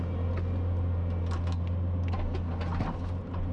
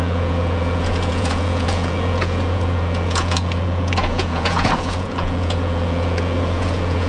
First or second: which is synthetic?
second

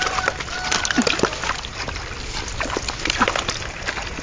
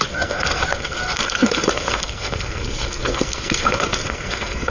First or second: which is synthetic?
second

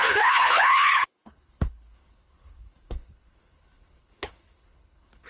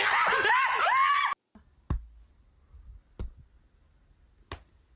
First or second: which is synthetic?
first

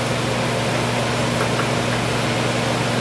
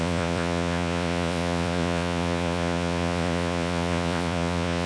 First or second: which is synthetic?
second